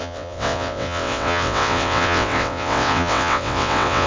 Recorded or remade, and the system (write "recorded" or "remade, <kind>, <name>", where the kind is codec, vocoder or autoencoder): remade, vocoder, WaveNeXt